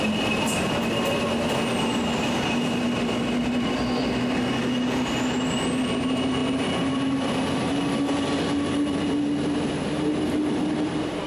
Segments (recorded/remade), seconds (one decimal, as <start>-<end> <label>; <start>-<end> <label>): 0.0-11.3 recorded